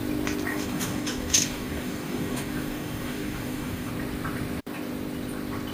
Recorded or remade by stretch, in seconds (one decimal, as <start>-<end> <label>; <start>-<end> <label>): 0.0-0.5 recorded; 0.5-3.9 remade; 3.9-5.7 recorded

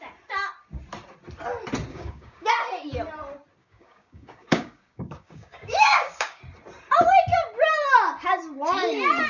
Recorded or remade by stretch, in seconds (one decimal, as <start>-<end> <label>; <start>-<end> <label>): 0.0-1.9 recorded; 1.9-2.5 remade; 2.5-3.6 recorded; 3.6-6.4 remade; 6.4-9.3 recorded

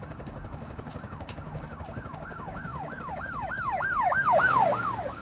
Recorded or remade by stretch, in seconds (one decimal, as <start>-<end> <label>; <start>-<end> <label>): 0.0-5.2 remade

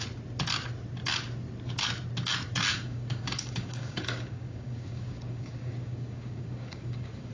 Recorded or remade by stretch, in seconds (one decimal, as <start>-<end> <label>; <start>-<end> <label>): 0.0-2.7 recorded; 2.7-7.3 remade

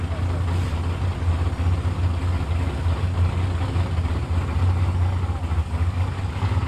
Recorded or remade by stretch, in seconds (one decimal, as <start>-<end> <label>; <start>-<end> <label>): 0.0-5.6 recorded; 5.6-6.7 remade

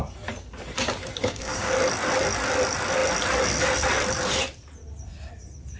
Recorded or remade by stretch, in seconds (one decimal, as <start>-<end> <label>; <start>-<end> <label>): 0.0-1.2 recorded; 1.2-1.7 remade; 1.7-5.8 recorded

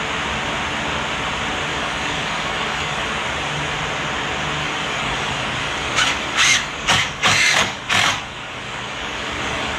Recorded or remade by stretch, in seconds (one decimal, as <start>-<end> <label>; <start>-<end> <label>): 0.0-1.7 recorded; 1.7-3.1 remade; 3.1-4.6 recorded; 4.6-9.8 remade

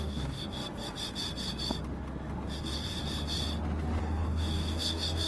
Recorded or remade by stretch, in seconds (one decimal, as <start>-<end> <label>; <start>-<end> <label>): 0.0-0.6 remade; 0.6-2.6 recorded; 2.6-3.0 remade; 3.0-4.0 recorded; 4.0-5.3 remade